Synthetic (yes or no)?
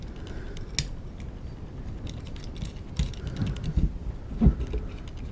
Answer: no